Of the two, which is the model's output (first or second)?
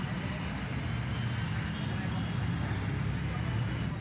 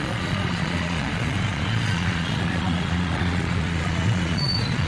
second